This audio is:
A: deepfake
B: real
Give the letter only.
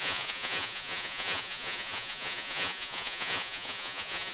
A